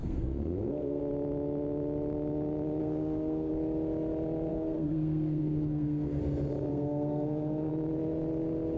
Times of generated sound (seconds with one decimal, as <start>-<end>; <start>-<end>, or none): 0.0-1.0; 2.8-3.5; 4.5-6.2; 6.7-7.7